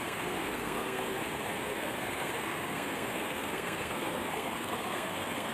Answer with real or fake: fake